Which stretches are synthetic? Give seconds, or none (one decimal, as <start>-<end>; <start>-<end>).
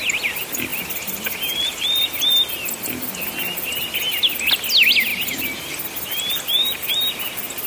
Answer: none